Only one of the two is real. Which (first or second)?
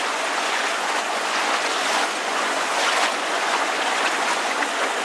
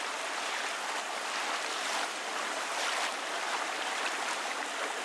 second